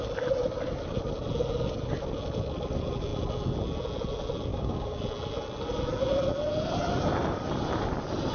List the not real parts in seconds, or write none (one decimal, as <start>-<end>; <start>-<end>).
4.5-5.0